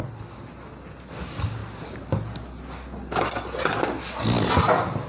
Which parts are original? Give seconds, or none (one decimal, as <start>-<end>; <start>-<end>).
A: 0.0-5.1